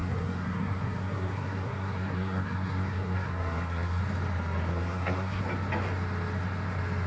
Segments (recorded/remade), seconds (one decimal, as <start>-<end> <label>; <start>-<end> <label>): 0.0-4.0 remade; 4.0-4.7 recorded; 4.7-5.4 remade; 5.4-7.1 recorded